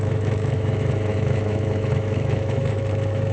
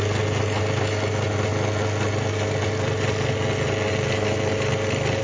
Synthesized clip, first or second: first